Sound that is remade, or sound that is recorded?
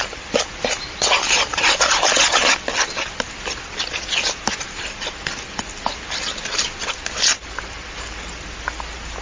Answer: recorded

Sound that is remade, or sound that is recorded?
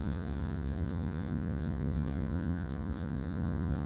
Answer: remade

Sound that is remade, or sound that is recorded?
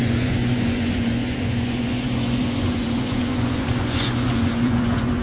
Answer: remade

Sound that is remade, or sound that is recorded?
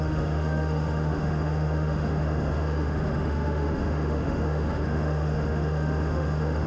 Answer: remade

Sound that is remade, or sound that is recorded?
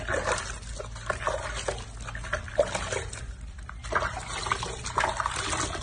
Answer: recorded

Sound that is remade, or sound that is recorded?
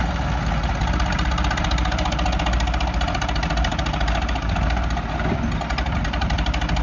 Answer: recorded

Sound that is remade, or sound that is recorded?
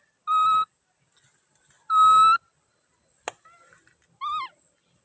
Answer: recorded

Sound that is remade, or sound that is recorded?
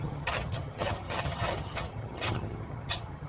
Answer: remade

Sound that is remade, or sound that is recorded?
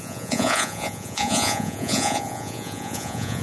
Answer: remade